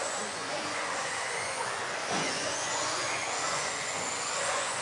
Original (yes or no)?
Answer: no